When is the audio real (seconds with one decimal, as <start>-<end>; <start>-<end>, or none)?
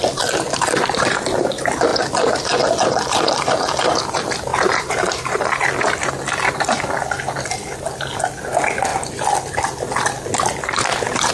0.0-4.5; 5.6-11.3